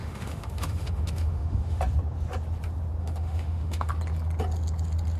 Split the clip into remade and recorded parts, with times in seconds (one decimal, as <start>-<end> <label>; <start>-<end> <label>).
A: 0.0-1.8 remade; 1.8-3.0 recorded; 3.0-3.9 remade; 3.9-5.2 recorded